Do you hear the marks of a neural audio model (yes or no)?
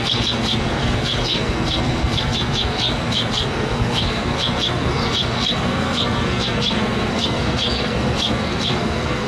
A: yes